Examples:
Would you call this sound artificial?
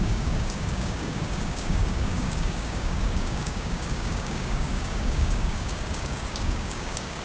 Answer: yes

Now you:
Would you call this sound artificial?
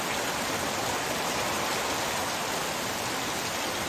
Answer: no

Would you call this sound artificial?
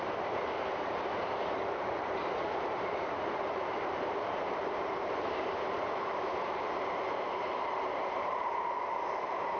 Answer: yes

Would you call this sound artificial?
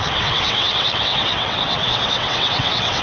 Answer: yes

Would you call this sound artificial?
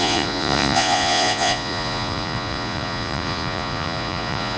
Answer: yes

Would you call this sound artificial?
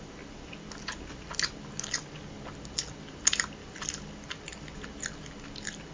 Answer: no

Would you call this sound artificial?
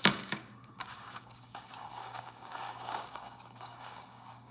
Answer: yes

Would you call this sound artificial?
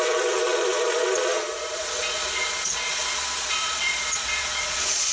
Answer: yes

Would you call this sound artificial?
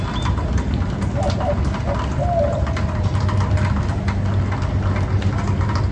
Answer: no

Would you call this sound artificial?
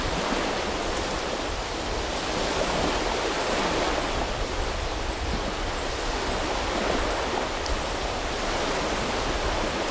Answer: no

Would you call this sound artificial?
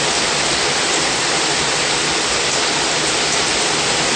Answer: no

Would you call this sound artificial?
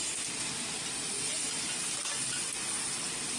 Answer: no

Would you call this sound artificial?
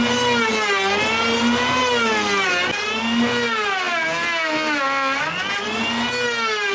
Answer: no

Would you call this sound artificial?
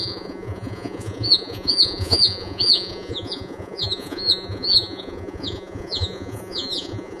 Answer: yes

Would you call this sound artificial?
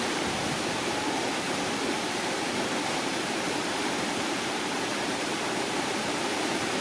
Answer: yes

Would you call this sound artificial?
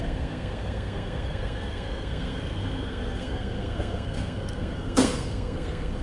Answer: yes